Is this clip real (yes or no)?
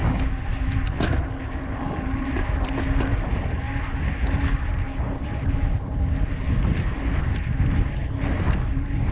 yes